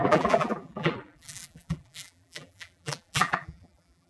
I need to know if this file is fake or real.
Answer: fake